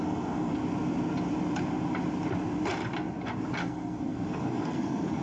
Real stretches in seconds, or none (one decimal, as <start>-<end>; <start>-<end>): 0.5-3.6